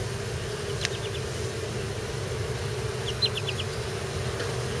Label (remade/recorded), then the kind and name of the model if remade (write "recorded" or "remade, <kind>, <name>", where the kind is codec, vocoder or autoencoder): recorded